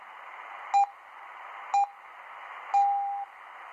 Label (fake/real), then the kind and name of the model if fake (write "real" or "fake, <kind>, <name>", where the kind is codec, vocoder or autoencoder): real